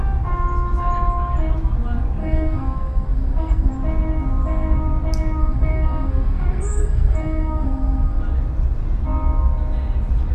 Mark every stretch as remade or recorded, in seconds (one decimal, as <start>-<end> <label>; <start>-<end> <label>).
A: 0.0-2.2 recorded; 2.2-3.7 remade; 3.7-5.4 recorded; 5.4-8.2 remade; 8.2-10.3 recorded